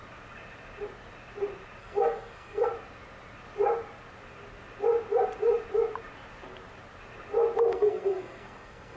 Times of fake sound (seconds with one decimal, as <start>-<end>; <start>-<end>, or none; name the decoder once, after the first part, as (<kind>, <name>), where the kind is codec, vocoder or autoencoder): 1.8-2.7 (codec, SNAC); 7.7-9.0